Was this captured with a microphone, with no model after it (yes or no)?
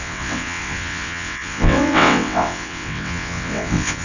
no